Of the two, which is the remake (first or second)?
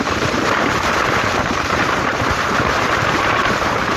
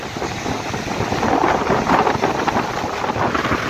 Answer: first